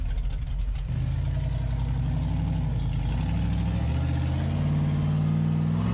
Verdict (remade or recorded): recorded